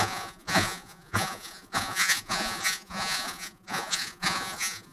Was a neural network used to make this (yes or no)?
yes